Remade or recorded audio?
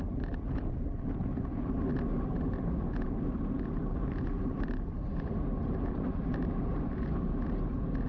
recorded